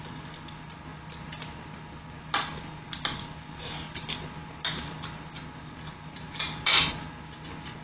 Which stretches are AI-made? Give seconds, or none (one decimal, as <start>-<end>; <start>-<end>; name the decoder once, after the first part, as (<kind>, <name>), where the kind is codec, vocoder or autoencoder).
none